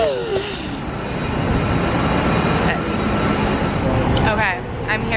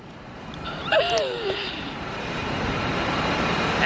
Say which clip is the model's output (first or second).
second